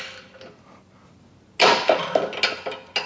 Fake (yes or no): no